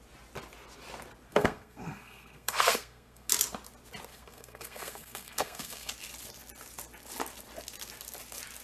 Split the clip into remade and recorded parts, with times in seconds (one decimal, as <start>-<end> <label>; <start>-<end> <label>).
0.0-1.3 recorded; 1.3-3.3 remade; 3.3-4.1 recorded; 4.1-5.9 remade; 5.9-8.6 recorded